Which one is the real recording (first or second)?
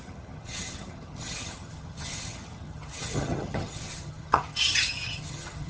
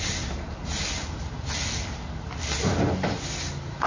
second